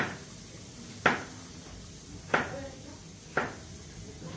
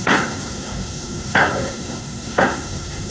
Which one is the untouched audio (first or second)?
first